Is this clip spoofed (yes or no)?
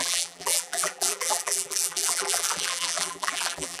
yes